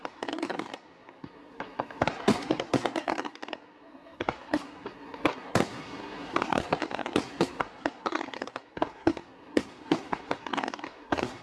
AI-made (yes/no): yes